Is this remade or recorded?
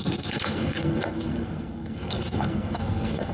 remade